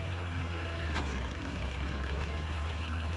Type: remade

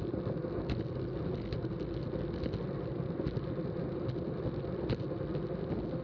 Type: recorded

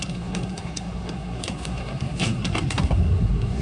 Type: remade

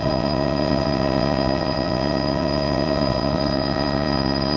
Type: remade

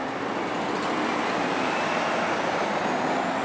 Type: recorded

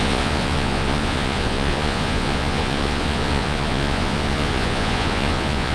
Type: remade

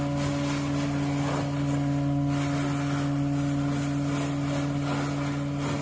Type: recorded